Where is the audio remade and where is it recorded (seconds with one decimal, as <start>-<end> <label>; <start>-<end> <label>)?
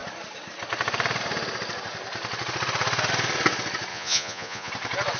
0.0-3.9 recorded; 3.9-4.7 remade; 4.7-5.2 recorded